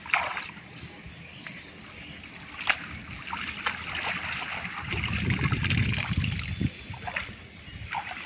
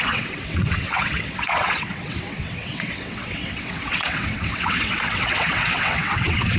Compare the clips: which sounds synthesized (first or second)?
second